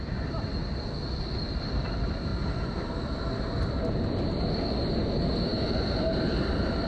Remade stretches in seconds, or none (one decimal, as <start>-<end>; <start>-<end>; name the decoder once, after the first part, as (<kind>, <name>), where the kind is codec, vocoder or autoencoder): 0.0-0.5 (vocoder, BigVGAN v2); 1.5-2.3; 5.1-6.9